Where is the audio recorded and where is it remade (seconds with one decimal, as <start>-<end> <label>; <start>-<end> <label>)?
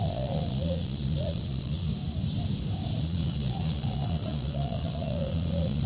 0.0-1.9 remade; 1.9-3.0 recorded; 3.0-5.9 remade